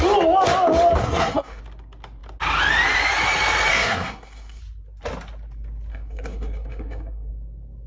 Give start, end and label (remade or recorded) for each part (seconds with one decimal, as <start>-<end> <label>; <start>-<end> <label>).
0.0-1.0 recorded; 1.0-1.6 remade; 1.6-3.7 recorded; 3.7-4.6 remade; 4.6-5.9 recorded; 5.9-7.3 remade; 7.3-7.9 recorded